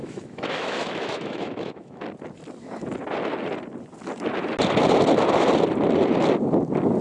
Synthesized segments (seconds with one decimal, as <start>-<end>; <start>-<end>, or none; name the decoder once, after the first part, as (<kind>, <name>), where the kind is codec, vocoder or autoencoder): 0.0-2.0 (autoencoder, DAC-VAE)